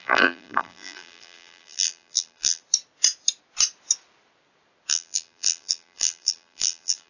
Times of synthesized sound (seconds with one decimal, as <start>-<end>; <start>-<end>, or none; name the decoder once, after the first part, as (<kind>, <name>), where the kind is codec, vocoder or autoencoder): 0.0-2.6 (vocoder, BigVGAN v2); 4.9-7.1